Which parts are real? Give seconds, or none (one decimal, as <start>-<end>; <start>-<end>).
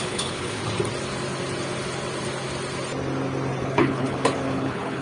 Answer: 0.6-3.6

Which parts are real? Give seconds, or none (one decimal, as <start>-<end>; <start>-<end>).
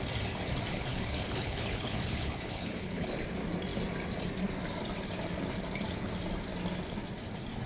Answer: 0.0-0.7; 3.1-7.7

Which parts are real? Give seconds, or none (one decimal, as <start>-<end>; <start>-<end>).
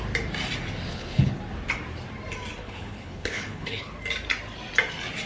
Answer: 0.0-0.9; 1.4-2.6; 3.9-5.3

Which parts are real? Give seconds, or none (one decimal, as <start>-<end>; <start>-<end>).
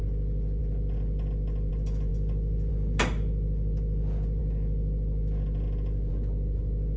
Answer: 0.0-7.0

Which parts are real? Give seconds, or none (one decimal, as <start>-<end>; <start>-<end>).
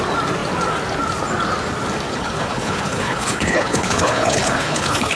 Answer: 0.0-2.1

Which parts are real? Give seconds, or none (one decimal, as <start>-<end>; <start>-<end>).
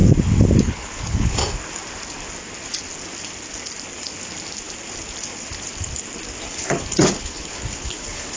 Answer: 0.0-0.6; 1.4-6.4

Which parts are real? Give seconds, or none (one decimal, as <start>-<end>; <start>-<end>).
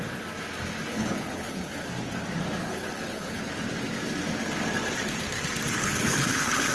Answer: 0.0-0.9; 1.9-2.6; 3.4-5.8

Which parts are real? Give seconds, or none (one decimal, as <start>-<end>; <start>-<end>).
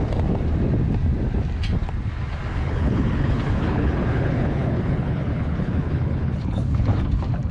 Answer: 0.0-2.5; 7.0-7.5